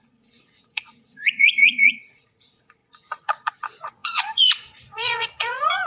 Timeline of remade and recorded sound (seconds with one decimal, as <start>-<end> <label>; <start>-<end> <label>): 0.0-5.9 remade